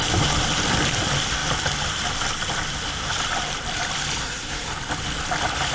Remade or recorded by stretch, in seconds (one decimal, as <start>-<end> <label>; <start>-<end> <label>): 0.0-4.2 recorded; 4.2-4.7 remade; 4.7-5.7 recorded